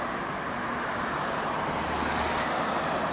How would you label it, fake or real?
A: real